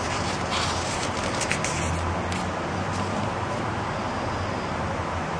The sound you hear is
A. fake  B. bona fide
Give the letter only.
B